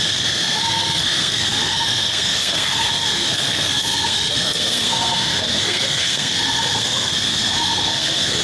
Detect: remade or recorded remade